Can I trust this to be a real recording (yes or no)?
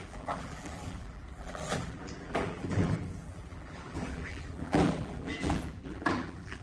no